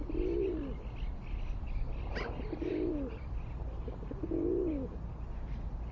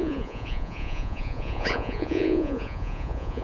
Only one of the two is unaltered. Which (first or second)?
first